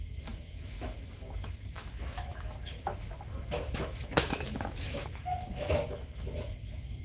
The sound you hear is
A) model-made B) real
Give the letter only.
A